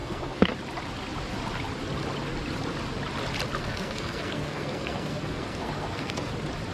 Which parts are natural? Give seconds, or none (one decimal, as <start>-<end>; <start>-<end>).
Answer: 0.5-3.6; 6.3-6.7